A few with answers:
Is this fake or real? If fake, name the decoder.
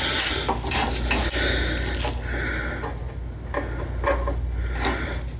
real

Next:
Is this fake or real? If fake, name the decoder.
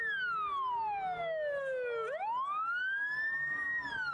real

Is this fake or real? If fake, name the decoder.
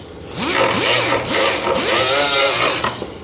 real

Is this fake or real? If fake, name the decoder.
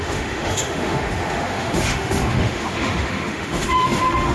fake, autoencoder, DAC-VAE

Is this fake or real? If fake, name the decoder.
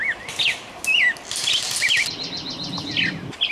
real